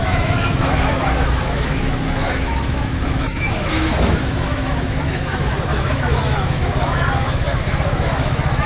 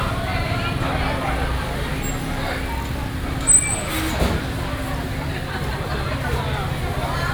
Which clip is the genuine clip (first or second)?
second